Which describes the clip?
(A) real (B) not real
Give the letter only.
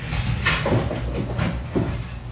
A